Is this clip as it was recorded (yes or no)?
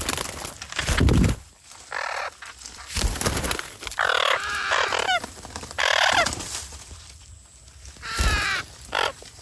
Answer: yes